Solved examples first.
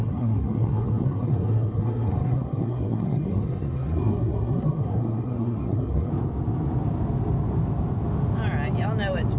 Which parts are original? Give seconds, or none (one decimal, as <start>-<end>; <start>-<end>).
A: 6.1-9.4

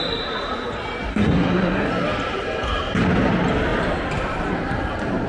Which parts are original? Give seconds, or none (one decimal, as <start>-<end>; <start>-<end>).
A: 0.0-1.1; 1.9-5.3

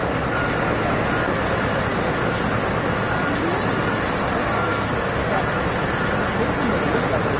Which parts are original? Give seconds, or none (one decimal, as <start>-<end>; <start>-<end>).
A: 0.0-4.4; 5.3-7.4

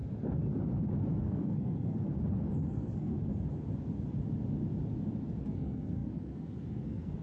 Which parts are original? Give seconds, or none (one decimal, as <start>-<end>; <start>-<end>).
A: 0.0-1.2; 2.1-2.7; 3.1-5.4